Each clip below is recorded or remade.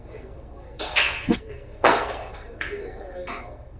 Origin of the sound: remade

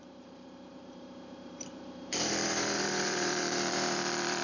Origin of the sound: remade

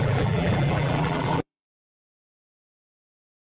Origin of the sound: remade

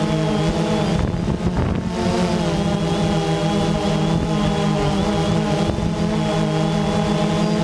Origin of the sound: recorded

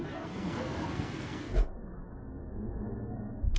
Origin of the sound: remade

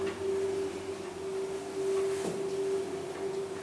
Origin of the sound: recorded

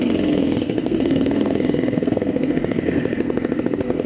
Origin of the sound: remade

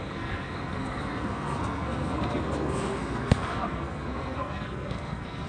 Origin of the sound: remade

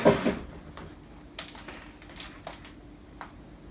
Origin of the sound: recorded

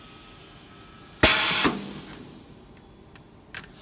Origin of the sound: recorded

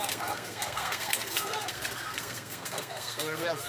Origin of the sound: remade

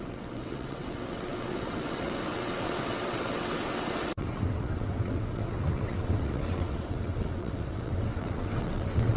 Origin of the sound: remade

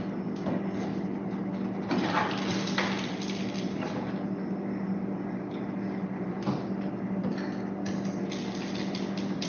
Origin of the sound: recorded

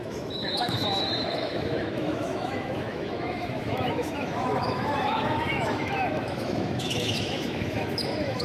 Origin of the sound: remade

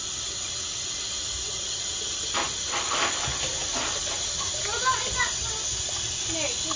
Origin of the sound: recorded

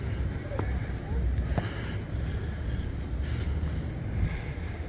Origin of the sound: recorded